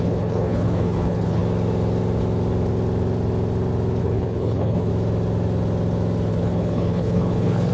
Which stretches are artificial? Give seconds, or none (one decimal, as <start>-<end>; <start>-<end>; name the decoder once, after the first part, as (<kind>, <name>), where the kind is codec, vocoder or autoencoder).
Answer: 0.0-1.4 (codec, HILCodec); 4.0-4.9; 6.3-7.7